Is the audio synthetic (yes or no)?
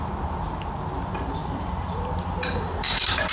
yes